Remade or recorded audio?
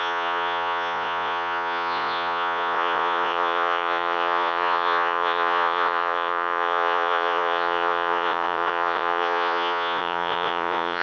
remade